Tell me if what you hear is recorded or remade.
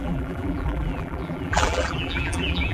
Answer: remade